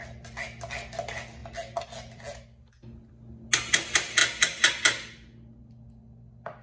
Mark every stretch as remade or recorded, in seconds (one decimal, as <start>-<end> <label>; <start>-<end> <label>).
0.0-6.6 recorded

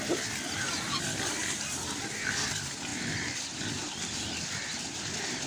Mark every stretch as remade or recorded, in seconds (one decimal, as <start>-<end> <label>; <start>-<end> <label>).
0.0-5.5 recorded